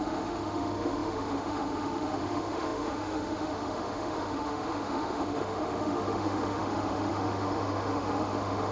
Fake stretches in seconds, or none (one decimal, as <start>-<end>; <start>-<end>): 0.0-8.7